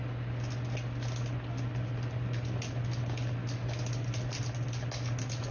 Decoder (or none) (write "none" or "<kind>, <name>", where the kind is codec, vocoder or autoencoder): none